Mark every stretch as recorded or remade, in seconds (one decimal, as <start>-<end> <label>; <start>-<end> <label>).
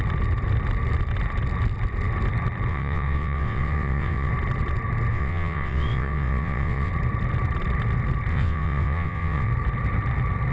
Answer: 0.0-2.7 recorded; 2.7-4.3 remade; 4.3-5.1 recorded; 5.1-6.9 remade; 6.9-8.3 recorded; 8.3-9.5 remade; 9.5-10.5 recorded